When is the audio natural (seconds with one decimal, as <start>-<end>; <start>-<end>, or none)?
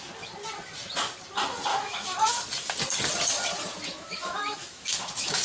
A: 0.0-1.7; 2.3-3.9